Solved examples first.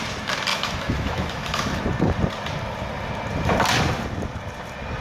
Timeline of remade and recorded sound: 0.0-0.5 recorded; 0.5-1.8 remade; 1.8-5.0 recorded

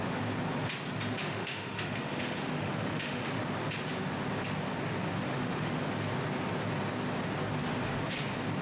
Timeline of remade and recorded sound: 0.0-1.2 recorded; 1.2-3.4 remade; 3.4-5.3 recorded; 5.3-5.9 remade; 5.9-8.6 recorded

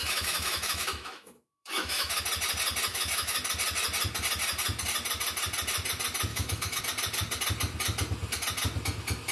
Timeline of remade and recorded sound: 0.0-2.2 remade; 2.2-2.9 recorded; 2.9-3.4 remade; 3.4-6.3 recorded; 6.3-6.8 remade; 6.8-9.3 recorded

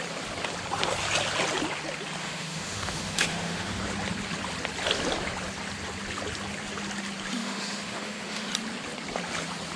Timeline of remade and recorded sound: 0.0-2.2 recorded; 2.2-3.8 remade; 3.8-7.4 recorded; 7.4-8.5 remade; 8.5-9.8 recorded

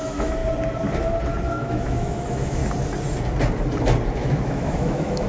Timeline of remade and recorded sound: 0.0-0.4 remade; 0.4-1.5 recorded; 1.5-2.6 remade; 2.6-4.1 recorded; 4.1-5.3 remade

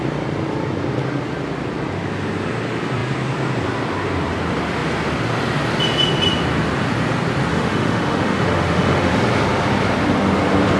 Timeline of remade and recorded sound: 0.0-7.5 recorded; 7.5-9.1 remade; 9.1-10.8 recorded

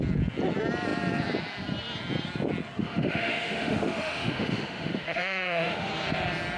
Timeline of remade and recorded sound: 0.0-2.8 recorded; 2.8-5.9 remade; 5.9-6.6 recorded